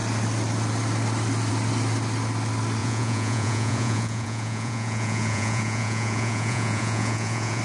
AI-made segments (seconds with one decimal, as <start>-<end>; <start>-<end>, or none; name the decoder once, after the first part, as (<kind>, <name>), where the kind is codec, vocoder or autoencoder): 2.8-7.6 (vocoder, Vocos)